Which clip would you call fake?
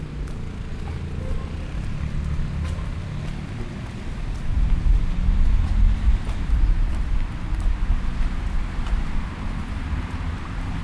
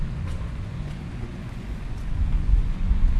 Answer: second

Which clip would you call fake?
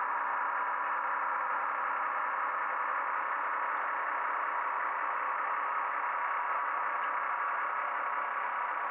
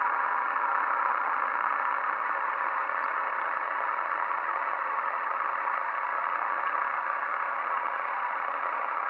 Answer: second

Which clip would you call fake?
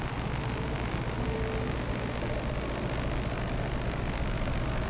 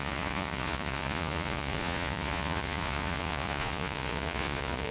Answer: second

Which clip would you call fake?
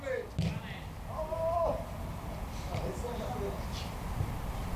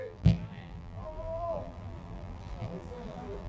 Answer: second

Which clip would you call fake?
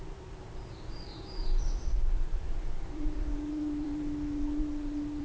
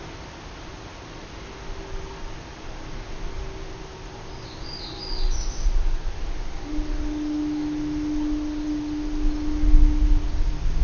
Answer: first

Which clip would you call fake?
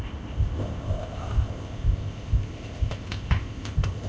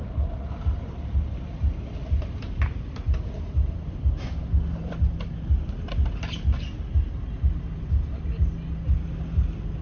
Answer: first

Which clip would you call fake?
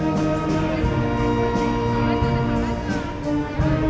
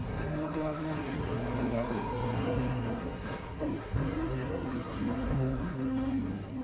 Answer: second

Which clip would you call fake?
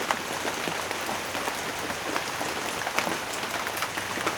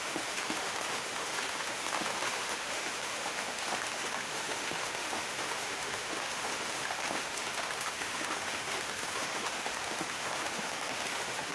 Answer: second